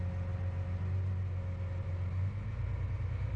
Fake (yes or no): no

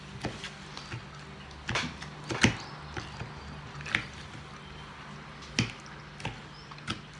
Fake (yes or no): no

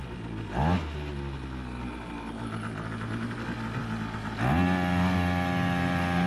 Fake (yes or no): no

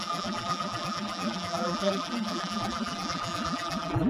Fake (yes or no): yes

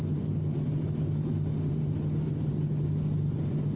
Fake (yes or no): no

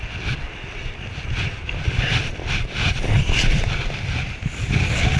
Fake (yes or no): no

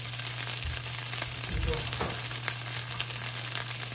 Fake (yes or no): no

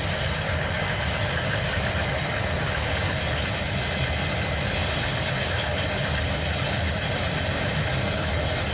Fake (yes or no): no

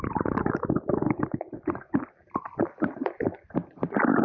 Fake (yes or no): yes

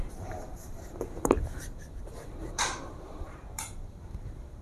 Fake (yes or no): yes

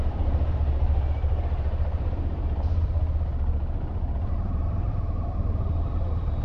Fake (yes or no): yes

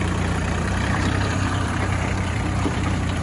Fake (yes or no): yes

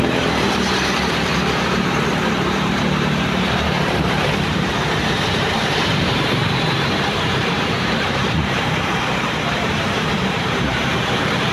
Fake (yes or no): yes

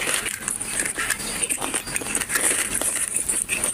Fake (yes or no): yes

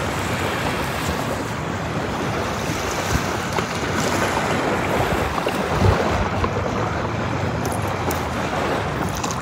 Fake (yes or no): no